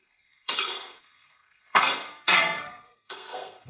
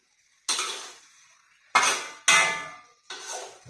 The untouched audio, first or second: second